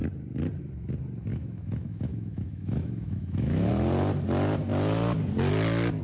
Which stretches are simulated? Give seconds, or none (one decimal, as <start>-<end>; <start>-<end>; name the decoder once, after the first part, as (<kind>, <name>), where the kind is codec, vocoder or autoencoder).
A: 1.3-3.7 (autoencoder, DAC-VAE)